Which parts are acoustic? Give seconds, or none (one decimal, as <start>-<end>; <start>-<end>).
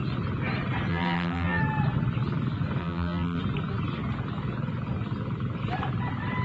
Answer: 0.0-0.9; 1.6-2.8; 3.4-6.4